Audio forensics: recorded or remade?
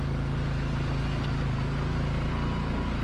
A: recorded